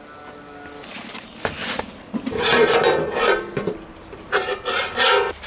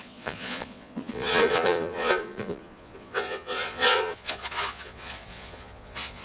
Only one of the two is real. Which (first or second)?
first